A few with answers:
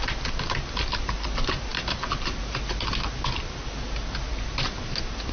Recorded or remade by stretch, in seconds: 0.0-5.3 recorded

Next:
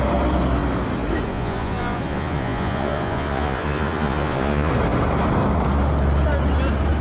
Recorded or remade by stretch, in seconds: 0.0-1.3 recorded; 1.3-4.7 remade; 4.7-7.0 recorded

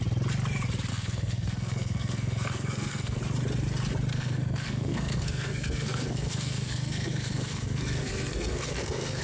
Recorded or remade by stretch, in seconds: 0.0-0.9 recorded; 0.9-3.2 remade; 3.2-4.1 recorded; 4.1-9.2 remade

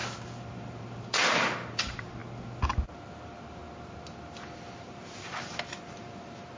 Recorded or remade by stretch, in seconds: 0.0-0.5 recorded; 0.5-2.2 remade; 2.2-3.1 recorded; 3.1-3.6 remade; 3.6-4.7 recorded; 4.7-6.6 remade

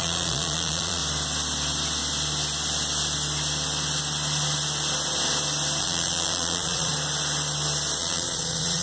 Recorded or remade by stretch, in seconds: 0.0-1.0 remade; 1.0-5.8 recorded; 5.8-6.9 remade; 6.9-8.0 recorded; 8.0-8.8 remade